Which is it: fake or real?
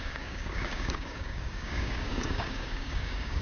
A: fake